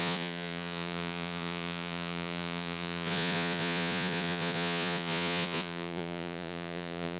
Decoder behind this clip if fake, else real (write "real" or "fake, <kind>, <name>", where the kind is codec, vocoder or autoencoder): fake, vocoder, Vocos